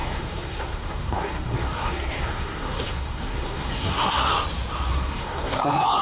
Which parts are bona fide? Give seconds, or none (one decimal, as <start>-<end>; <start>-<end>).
4.3-4.9